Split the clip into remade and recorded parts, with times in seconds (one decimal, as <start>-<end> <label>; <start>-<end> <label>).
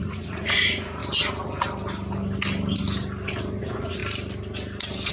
0.0-1.0 remade; 1.0-3.6 recorded; 3.6-4.0 remade; 4.0-5.1 recorded